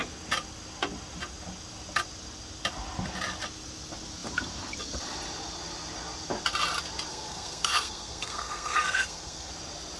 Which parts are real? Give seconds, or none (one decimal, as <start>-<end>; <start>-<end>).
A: 0.0-7.1; 9.5-10.0